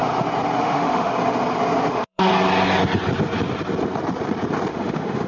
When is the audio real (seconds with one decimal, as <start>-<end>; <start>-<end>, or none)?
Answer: 0.0-0.6; 1.1-1.9; 2.3-4.7